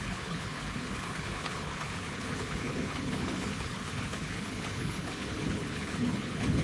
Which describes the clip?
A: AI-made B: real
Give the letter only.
A